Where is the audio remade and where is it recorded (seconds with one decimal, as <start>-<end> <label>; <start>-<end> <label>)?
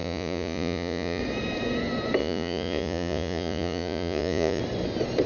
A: 0.0-1.2 remade; 1.2-2.2 recorded; 2.2-4.6 remade; 4.6-5.3 recorded